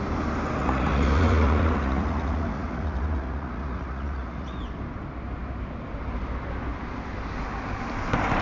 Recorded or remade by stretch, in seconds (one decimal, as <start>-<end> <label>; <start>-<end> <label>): 0.0-0.6 recorded; 0.6-4.6 remade; 4.6-8.4 recorded